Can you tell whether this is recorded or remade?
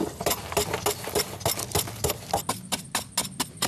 recorded